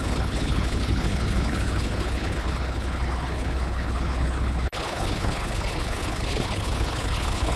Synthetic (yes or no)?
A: yes